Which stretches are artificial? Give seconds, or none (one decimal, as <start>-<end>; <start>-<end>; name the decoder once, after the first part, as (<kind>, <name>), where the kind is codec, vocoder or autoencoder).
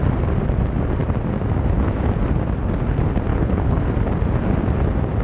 3.3-3.9 (codec, HILCodec)